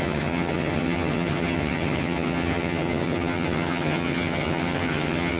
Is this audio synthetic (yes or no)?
yes